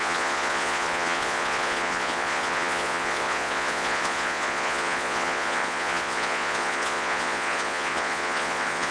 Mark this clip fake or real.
fake